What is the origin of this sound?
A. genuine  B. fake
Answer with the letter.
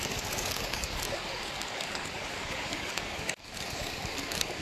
B